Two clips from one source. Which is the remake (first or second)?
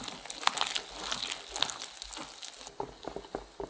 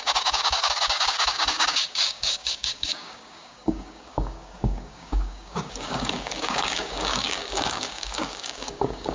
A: second